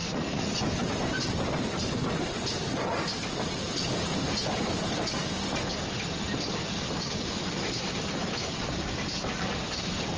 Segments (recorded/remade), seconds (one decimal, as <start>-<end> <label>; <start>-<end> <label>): 0.0-0.6 remade; 0.6-10.2 recorded

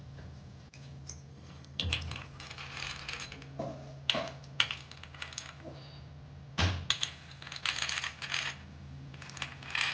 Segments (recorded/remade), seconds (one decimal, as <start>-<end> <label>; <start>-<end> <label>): 0.0-1.3 recorded; 1.3-1.9 remade; 1.9-9.9 recorded